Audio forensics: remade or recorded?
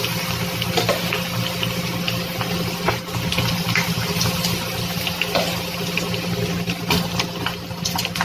recorded